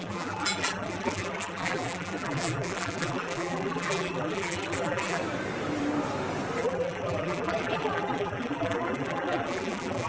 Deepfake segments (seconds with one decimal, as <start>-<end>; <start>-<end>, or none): 0.0-5.2; 6.6-10.1